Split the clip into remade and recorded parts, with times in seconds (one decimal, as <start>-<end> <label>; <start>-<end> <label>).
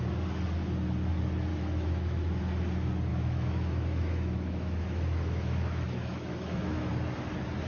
0.0-1.5 recorded; 1.5-2.4 remade; 2.4-3.1 recorded; 3.1-6.9 remade; 6.9-7.7 recorded